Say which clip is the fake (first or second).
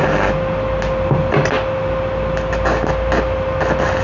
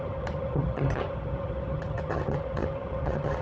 second